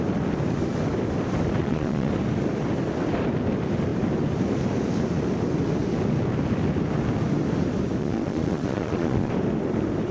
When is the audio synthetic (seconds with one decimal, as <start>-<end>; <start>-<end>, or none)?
1.6-2.1; 8.0-9.3